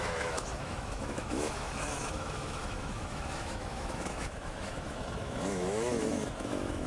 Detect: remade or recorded remade